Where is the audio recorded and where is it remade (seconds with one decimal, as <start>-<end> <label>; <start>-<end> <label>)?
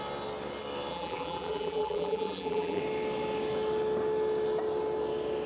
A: 0.0-0.9 recorded; 0.9-2.8 remade; 2.8-5.5 recorded